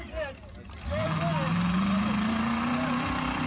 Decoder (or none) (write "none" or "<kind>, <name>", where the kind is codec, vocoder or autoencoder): none